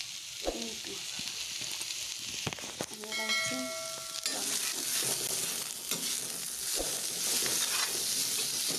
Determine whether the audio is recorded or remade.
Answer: recorded